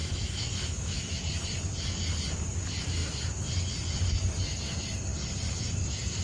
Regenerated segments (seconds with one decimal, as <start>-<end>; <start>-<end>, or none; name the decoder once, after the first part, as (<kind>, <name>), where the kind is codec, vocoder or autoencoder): 0.0-1.2 (autoencoder, DAC-VAE)